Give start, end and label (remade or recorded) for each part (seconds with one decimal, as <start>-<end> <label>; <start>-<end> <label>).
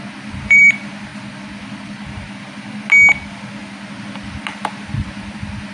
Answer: 0.0-1.1 remade; 1.1-4.0 recorded; 4.0-5.7 remade